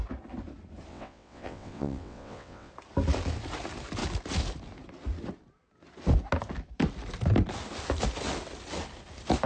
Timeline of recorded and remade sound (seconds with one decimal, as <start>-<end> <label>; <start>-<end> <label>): 0.0-0.9 recorded; 0.9-2.7 remade; 2.7-9.5 recorded